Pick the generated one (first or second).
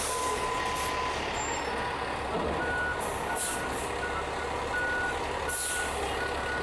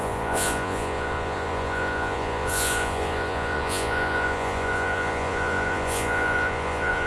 second